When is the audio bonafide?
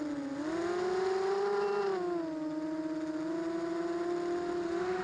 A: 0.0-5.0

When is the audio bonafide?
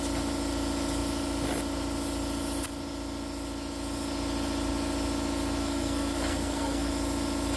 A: 0.0-5.6; 6.9-7.6